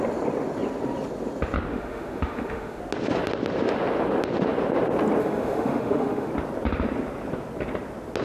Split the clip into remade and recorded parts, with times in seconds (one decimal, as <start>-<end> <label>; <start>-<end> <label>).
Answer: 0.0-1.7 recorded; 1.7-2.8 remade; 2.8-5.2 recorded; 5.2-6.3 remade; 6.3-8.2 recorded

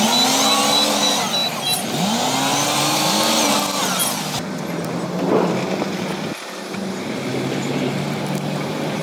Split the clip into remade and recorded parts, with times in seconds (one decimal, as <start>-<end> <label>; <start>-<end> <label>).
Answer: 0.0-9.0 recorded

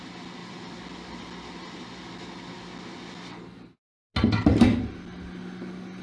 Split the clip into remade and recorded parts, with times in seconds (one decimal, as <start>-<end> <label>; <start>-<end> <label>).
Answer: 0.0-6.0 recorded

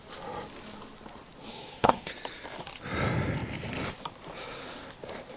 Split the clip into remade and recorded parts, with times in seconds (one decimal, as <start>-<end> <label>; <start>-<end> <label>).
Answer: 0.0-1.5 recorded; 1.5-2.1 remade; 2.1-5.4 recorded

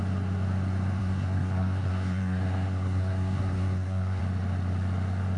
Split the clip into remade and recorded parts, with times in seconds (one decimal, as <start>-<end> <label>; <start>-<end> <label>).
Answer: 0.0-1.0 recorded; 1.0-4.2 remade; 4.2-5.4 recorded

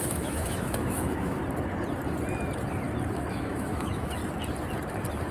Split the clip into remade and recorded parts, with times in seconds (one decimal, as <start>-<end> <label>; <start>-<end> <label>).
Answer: 0.0-1.4 remade; 1.4-3.3 recorded; 3.3-4.2 remade; 4.2-5.3 recorded